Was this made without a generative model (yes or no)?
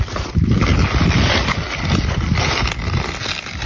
yes